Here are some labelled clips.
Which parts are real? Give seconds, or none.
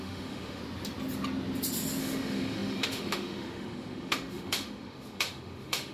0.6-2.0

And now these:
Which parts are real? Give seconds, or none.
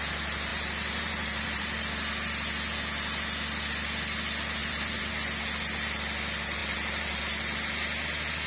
0.0-0.5; 1.8-4.6; 5.1-6.6; 7.2-8.5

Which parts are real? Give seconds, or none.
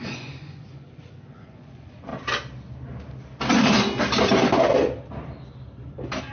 2.1-6.3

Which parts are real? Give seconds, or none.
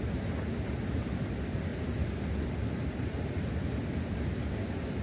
0.0-5.0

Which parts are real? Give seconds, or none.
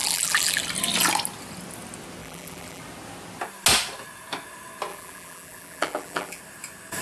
0.6-2.2; 2.8-4.9; 6.4-7.0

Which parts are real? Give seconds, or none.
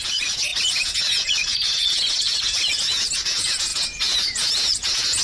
none